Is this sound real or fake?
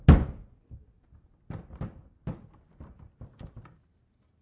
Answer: real